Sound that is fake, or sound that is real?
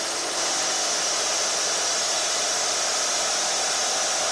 real